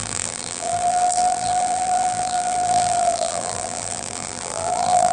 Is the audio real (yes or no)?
no